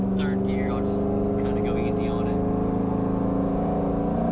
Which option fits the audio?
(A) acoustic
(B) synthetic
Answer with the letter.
A